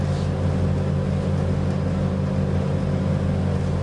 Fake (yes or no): no